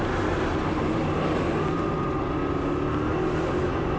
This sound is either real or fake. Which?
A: real